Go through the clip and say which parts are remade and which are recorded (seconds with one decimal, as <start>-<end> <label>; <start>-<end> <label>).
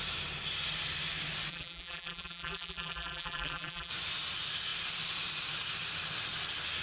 0.0-1.5 recorded; 1.5-3.9 remade; 3.9-6.8 recorded